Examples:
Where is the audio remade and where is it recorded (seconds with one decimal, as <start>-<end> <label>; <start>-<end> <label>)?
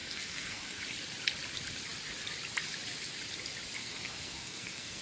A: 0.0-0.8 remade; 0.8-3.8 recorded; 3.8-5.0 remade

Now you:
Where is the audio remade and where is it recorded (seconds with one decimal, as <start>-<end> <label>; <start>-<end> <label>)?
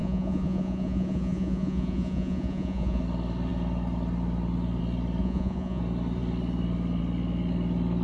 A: 0.0-3.0 remade; 3.0-5.2 recorded; 5.2-5.8 remade; 5.8-8.0 recorded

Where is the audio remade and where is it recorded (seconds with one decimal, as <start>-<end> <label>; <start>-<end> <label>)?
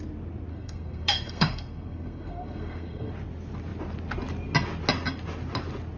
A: 0.0-0.5 recorded; 0.5-3.1 remade; 3.1-6.0 recorded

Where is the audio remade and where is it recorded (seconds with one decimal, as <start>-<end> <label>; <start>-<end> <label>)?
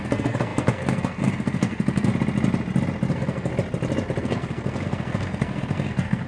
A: 0.0-2.1 remade; 2.1-3.1 recorded; 3.1-3.5 remade; 3.5-4.2 recorded; 4.2-6.3 remade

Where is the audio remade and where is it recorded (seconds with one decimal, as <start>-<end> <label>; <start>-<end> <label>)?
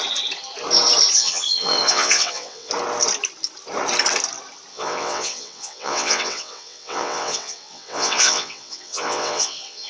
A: 0.0-1.2 recorded; 1.2-2.7 remade; 2.7-4.7 recorded; 4.7-9.9 remade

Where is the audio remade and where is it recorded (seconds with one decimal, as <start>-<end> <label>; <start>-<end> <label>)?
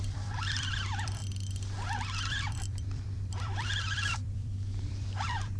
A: 0.0-1.2 remade; 1.2-2.3 recorded; 2.3-5.6 remade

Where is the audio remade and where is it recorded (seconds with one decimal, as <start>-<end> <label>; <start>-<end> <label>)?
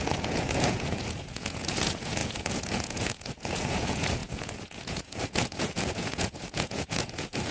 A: 0.0-7.5 remade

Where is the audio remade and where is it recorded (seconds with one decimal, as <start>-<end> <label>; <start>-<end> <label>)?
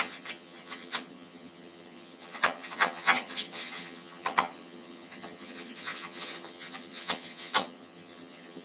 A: 0.0-8.6 remade